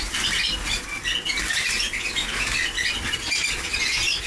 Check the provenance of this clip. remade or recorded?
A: recorded